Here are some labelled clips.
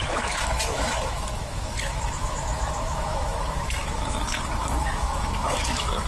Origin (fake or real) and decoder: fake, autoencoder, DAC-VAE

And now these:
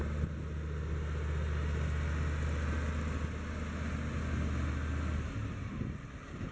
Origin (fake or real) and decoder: real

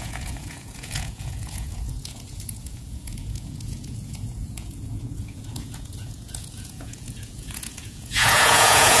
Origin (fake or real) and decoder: fake, vocoder, Vocos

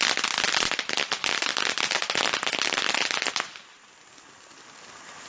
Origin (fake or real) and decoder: real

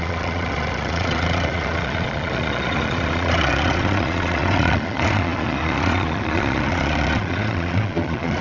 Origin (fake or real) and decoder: fake, vocoder, Vocos